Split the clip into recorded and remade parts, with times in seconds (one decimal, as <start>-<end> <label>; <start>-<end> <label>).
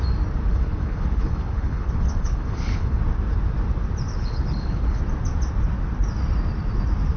0.0-0.5 recorded; 0.5-3.0 remade; 3.0-4.1 recorded; 4.1-5.0 remade; 5.0-7.2 recorded